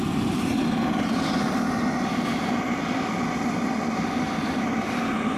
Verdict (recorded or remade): recorded